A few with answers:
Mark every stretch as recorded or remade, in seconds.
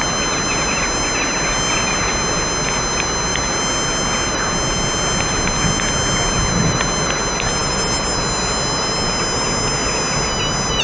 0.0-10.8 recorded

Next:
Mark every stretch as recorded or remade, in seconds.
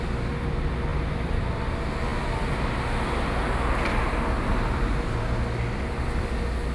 0.0-0.9 recorded; 0.9-1.5 remade; 1.5-6.7 recorded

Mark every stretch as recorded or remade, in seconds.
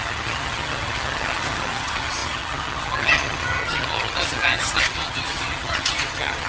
0.0-6.5 remade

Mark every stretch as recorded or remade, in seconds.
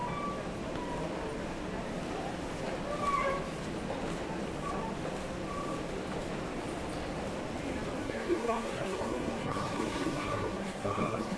0.0-8.0 recorded; 8.0-11.4 remade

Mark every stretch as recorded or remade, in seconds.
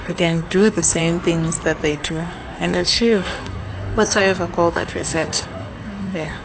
0.0-1.0 remade; 1.0-1.9 recorded; 1.9-4.2 remade; 4.2-4.7 recorded; 4.7-6.4 remade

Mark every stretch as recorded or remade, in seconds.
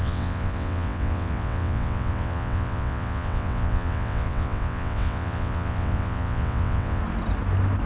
0.0-7.0 remade; 7.0-7.9 recorded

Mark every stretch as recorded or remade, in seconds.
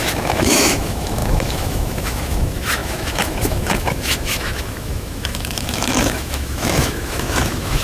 0.0-7.8 remade